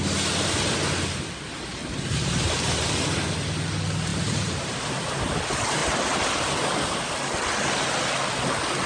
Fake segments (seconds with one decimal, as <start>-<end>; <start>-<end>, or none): 1.8-2.9; 4.1-4.8